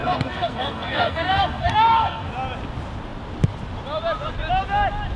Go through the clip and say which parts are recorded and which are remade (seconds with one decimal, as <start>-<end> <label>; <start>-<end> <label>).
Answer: 0.0-2.3 remade; 2.3-5.2 recorded